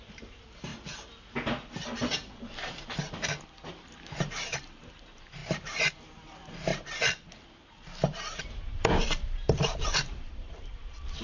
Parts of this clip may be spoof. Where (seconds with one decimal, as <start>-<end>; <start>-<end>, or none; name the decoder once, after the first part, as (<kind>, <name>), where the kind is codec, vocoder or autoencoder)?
0.0-0.7 (vocoder, BigVGAN v2); 4.2-6.7; 8.4-11.2